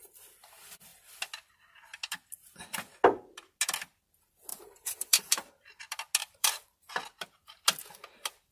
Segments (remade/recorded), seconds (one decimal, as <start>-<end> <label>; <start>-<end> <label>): 0.0-4.5 recorded; 4.5-5.5 remade; 5.5-6.2 recorded; 6.2-6.9 remade; 6.9-8.5 recorded